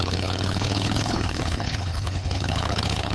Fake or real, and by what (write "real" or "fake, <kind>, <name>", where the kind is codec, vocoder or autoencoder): fake, codec, HILCodec